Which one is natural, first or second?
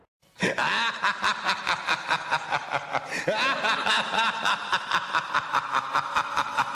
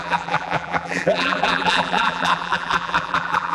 first